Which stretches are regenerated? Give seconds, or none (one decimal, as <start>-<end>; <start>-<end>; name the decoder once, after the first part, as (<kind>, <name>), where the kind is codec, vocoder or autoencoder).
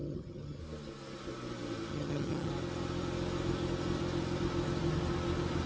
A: 0.0-0.6 (vocoder, HiFi-GAN); 1.9-2.5